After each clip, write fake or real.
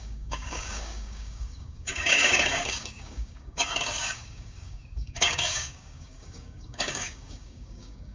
fake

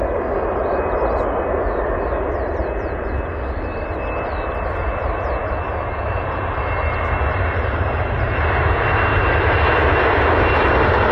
real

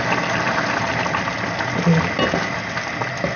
real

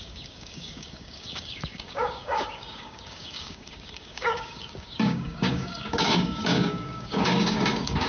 fake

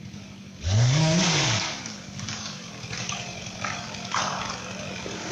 fake